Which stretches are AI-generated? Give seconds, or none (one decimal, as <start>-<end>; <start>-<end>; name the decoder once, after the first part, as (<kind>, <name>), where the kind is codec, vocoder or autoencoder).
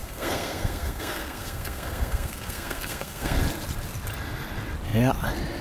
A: 0.0-3.4 (codec, SNAC)